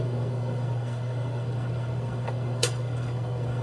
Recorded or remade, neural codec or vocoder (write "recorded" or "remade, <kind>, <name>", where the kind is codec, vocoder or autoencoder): remade, codec, SNAC